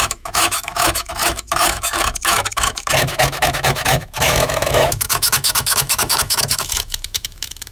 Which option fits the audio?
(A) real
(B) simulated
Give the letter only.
B